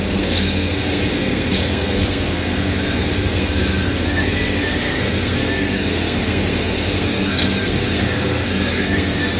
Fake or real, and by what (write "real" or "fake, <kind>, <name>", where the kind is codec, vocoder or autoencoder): fake, codec, SNAC